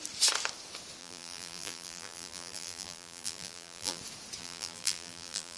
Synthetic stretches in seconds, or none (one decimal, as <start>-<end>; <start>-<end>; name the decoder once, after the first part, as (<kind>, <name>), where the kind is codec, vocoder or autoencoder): 1.0-4.0 (vocoder, BigVGAN v2); 4.4-5.6